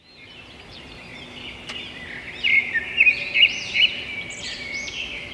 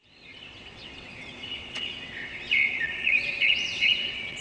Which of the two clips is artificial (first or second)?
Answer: second